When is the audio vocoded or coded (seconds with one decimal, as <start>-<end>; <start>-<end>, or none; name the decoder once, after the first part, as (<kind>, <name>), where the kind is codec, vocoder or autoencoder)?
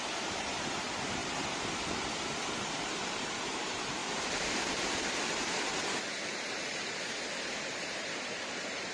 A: 0.0-4.0 (vocoder, BigVGAN v2); 5.3-8.9